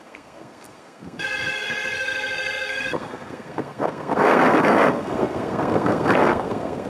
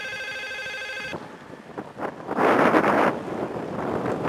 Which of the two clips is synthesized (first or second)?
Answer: first